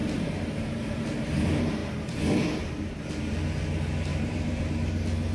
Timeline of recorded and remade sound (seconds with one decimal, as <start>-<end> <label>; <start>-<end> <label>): 0.0-1.0 remade; 1.0-4.1 recorded; 4.1-4.7 remade; 4.7-5.3 recorded